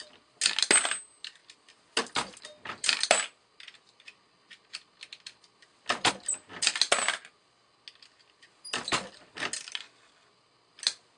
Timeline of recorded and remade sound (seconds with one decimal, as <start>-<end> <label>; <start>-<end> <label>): 0.0-11.2 recorded